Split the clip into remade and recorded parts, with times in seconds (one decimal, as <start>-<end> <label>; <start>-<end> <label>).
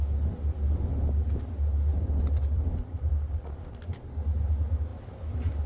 0.0-1.9 recorded; 1.9-3.1 remade; 3.1-4.9 recorded; 4.9-5.7 remade